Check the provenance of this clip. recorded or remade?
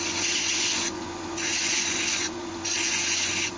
remade